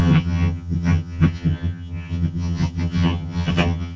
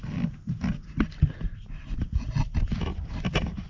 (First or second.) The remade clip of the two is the first